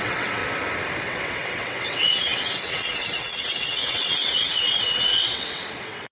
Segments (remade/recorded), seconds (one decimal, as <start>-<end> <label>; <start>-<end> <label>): 0.0-0.4 remade; 0.4-1.0 recorded; 1.0-6.1 remade